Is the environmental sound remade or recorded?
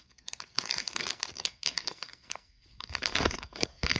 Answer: remade